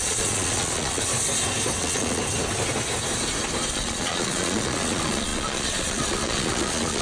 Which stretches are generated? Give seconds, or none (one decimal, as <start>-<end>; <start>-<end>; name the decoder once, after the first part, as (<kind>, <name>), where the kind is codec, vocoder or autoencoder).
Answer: 0.0-1.1 (vocoder, Vocos); 1.8-2.2; 3.7-7.0